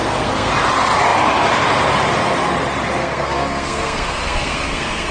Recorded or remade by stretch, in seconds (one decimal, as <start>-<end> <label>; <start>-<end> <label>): 0.0-0.5 remade; 0.5-3.0 recorded; 3.0-5.1 remade